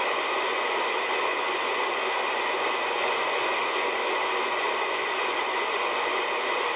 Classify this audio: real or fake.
fake